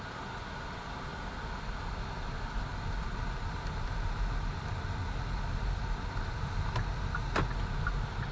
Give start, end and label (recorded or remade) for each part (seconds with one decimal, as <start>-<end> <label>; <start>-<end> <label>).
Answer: 0.0-8.3 recorded